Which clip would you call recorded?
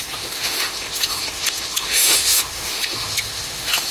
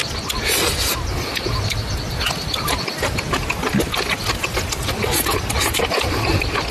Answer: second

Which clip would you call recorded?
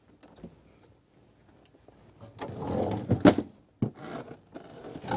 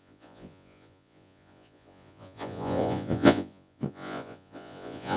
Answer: first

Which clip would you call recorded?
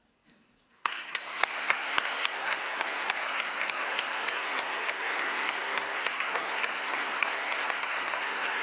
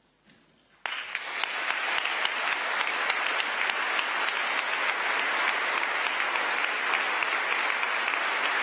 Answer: second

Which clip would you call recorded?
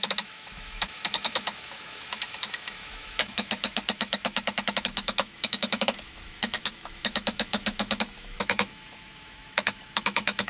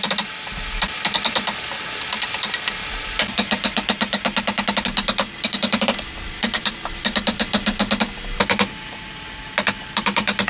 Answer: second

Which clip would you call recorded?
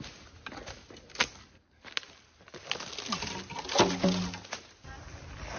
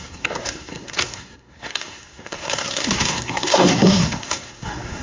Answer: first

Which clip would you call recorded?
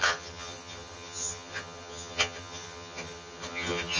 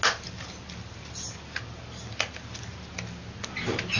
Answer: second